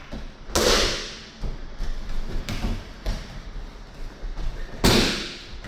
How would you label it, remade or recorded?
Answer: recorded